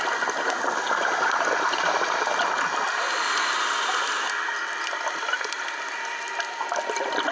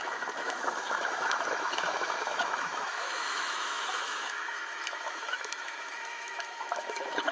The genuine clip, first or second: first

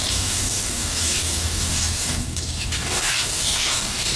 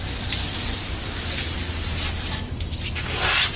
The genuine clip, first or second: second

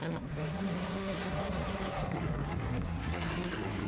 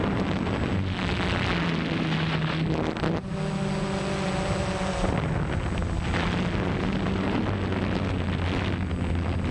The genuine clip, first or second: second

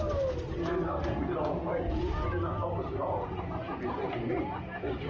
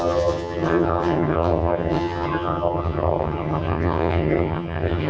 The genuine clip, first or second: first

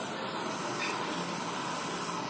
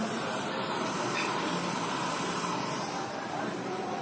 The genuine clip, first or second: first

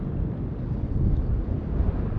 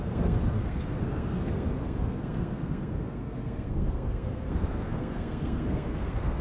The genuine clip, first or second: first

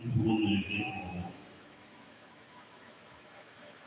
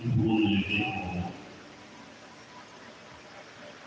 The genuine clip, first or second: second